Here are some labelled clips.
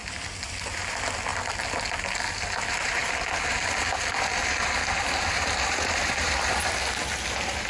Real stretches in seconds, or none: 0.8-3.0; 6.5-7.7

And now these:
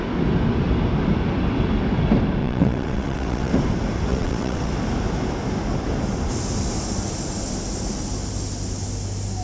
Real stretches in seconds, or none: 0.0-2.4; 3.5-4.1; 4.7-9.4